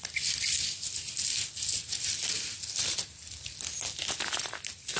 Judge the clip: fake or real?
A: real